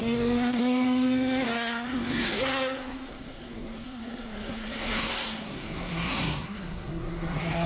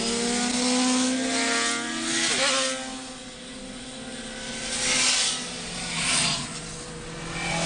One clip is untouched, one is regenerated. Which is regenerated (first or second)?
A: first